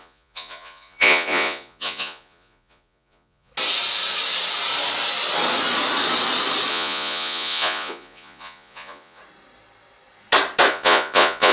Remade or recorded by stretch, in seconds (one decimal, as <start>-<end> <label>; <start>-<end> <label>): 0.0-3.5 remade; 3.5-6.7 recorded; 6.7-9.2 remade; 9.2-10.7 recorded; 10.7-11.5 remade

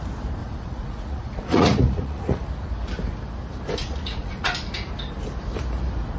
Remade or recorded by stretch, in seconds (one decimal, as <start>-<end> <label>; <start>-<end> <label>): 0.0-0.4 recorded; 0.4-2.4 remade; 2.4-3.8 recorded; 3.8-4.5 remade; 4.5-6.2 recorded

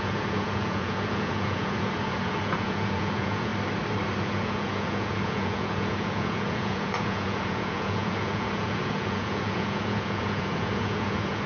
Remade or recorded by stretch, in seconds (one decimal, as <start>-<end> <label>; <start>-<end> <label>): 0.0-3.5 remade; 3.5-4.2 recorded; 4.2-11.5 remade

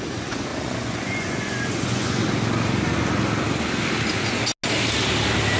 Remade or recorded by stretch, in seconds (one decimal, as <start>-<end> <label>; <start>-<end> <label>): 0.0-2.2 remade; 2.2-5.6 recorded